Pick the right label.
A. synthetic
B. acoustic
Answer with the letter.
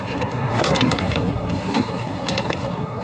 A